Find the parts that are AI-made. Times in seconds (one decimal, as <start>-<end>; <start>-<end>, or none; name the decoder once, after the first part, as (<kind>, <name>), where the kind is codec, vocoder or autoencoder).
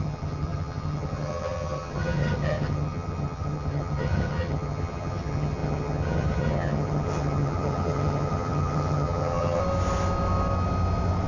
0.0-9.6 (vocoder, HiFi-GAN)